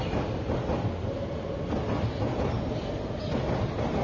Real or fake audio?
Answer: real